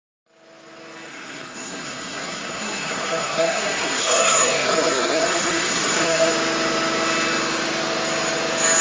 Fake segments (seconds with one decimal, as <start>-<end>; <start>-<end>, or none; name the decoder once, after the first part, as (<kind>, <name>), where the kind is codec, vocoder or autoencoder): 1.1-6.3 (codec, SNAC)